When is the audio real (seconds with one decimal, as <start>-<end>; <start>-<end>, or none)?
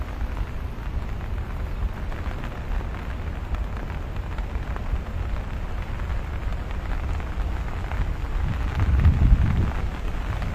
0.0-10.5